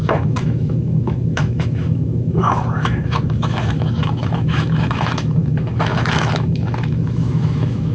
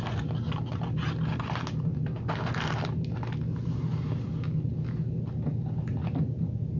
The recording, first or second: second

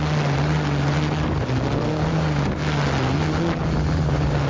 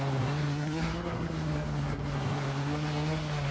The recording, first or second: first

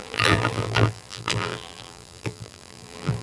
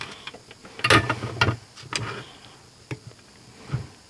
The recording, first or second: second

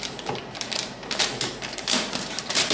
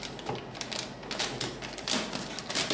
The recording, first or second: second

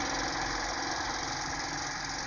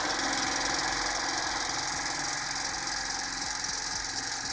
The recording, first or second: second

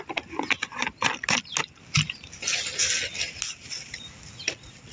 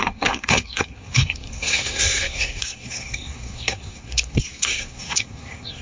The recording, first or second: first